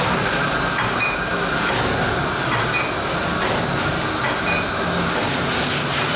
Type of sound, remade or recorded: recorded